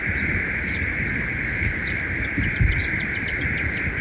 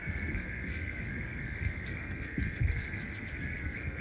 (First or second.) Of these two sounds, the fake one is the second